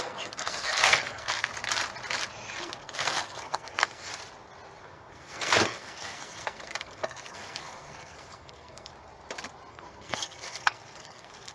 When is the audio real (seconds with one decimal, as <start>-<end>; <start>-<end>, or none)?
1.5-2.6; 4.1-4.8; 8.9-9.7